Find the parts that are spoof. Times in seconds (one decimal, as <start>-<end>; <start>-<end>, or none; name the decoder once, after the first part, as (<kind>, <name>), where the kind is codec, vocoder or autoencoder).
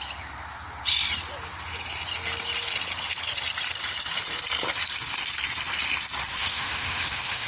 6.3-7.5 (autoencoder, DAC-VAE)